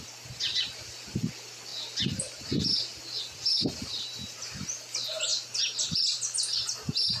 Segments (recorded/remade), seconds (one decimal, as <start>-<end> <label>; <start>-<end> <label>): 0.0-7.2 recorded